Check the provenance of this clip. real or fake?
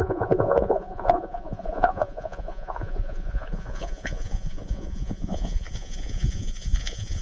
fake